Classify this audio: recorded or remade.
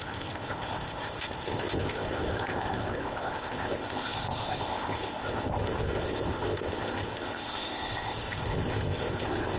remade